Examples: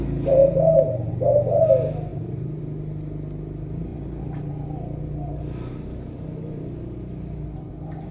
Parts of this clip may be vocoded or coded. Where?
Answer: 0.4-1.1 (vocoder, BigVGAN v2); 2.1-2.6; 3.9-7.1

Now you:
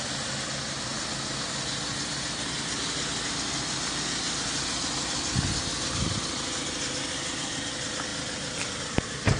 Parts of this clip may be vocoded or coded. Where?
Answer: none

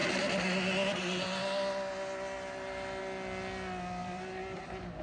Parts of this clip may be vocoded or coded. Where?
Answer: 4.0-4.6 (vocoder, BigVGAN v2)

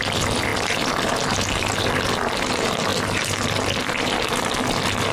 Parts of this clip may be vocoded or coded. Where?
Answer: 0.5-1.8 (vocoder, BigVGAN v2); 2.9-5.1

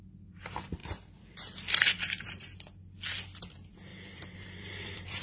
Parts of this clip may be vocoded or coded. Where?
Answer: 0.8-1.6 (vocoder, BigVGAN v2); 3.9-5.2

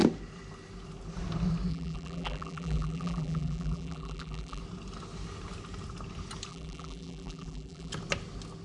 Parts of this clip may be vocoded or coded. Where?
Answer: 1.7-4.6 (vocoder, BigVGAN v2); 6.5-7.9

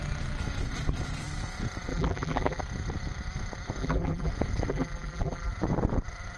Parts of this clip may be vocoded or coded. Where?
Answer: 1.9-2.6 (vocoder, BigVGAN v2); 3.8-4.3; 4.7-5.5